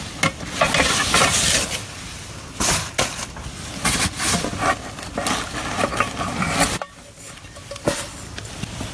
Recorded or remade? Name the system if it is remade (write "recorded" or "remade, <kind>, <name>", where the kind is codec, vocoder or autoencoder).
recorded